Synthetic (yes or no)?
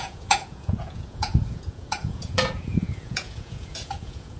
yes